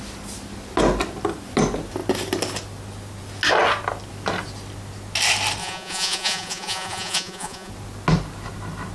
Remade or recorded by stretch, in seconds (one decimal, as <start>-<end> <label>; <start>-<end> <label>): 0.0-5.6 recorded; 5.6-7.7 remade; 7.7-8.9 recorded